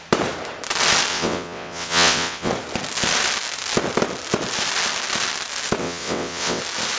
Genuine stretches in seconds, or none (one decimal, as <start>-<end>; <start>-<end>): 0.0-1.1; 2.5-5.8; 6.6-7.0